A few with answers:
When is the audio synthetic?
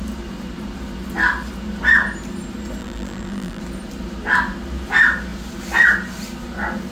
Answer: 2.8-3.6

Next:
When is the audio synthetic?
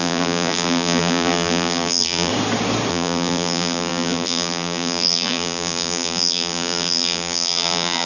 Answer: 0.0-2.3; 2.9-8.1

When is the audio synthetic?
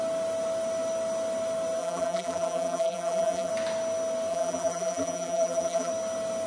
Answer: 1.8-3.5; 4.3-5.9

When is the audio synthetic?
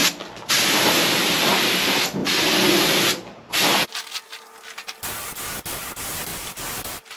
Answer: 6.3-7.2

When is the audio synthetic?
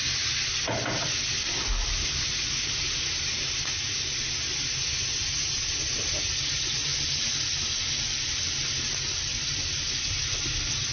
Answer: none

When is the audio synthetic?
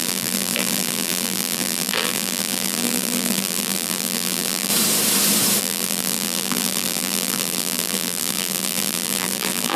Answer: 0.0-4.7; 5.6-9.8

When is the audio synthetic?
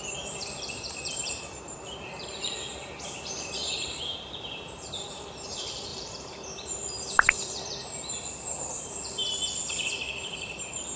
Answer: 0.0-11.0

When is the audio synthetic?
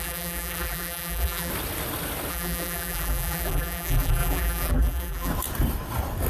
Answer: 0.0-1.5; 2.3-5.3